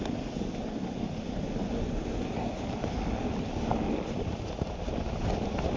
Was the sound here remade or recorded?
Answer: recorded